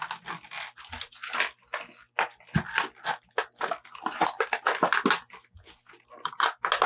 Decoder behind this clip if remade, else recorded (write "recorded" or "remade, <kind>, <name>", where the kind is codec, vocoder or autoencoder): recorded